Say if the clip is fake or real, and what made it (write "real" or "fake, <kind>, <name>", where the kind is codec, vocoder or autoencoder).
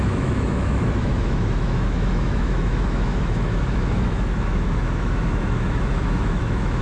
fake, autoencoder, DAC-VAE